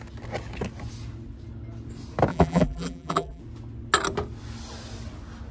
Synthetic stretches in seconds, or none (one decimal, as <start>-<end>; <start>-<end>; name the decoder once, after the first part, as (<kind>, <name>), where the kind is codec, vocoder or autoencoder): 2.3-3.4 (vocoder, BigVGAN v2)

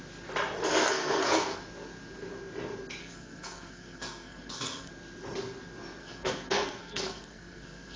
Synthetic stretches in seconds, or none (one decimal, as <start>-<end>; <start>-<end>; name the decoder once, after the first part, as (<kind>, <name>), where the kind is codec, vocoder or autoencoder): 0.8-1.6 (codec, SNAC); 3.0-4.9; 6.0-8.0

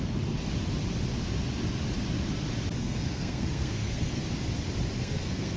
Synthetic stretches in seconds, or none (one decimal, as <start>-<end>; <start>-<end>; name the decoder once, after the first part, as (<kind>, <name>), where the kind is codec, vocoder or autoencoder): 2.8-4.2 (codec, SNAC); 5.0-5.6

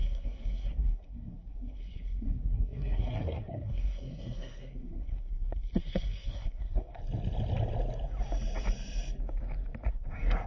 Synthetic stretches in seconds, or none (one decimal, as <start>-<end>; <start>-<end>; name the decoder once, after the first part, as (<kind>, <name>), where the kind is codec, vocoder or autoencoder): 0.0-7.0 (codec, SNAC); 9.9-10.5

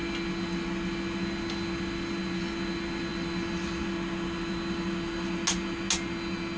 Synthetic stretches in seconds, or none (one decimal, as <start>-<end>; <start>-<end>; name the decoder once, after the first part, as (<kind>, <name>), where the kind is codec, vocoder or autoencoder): none

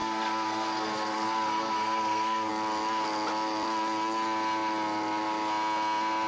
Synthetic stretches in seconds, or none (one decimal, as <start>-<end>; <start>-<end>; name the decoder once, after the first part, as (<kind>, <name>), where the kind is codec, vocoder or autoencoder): 0.0-2.5 (codec, SNAC)

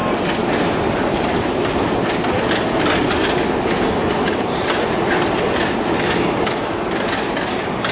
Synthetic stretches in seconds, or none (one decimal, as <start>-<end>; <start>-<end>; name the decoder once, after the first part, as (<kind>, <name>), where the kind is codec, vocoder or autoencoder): none